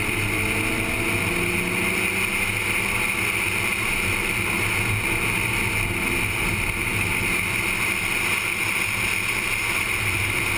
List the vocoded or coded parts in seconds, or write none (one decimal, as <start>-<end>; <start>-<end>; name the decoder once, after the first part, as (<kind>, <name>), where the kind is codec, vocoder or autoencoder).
none